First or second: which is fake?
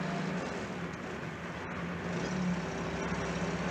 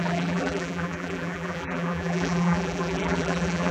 second